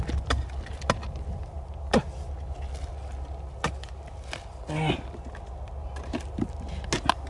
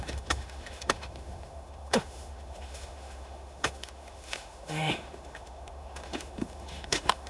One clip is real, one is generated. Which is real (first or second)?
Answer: first